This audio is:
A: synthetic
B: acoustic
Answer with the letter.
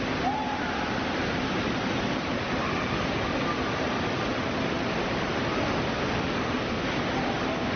B